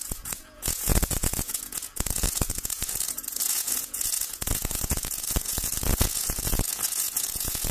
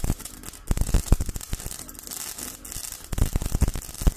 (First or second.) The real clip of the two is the second